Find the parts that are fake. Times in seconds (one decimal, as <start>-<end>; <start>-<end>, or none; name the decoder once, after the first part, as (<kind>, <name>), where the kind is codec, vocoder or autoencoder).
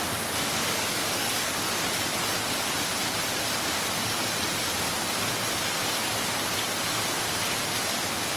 0.6-1.6 (codec, DAC)